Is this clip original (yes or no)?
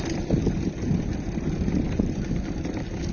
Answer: yes